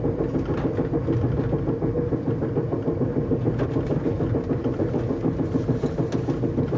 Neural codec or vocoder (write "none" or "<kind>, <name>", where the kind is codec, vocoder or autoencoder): none